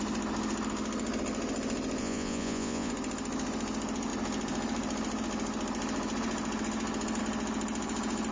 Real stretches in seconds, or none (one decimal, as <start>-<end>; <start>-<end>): 0.0-2.0; 2.9-8.3